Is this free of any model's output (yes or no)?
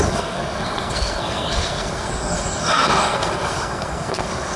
no